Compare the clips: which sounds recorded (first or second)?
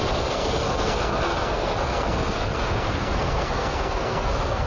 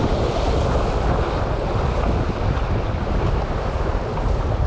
second